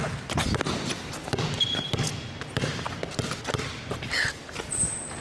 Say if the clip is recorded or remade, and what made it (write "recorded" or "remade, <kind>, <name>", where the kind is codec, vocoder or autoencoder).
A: recorded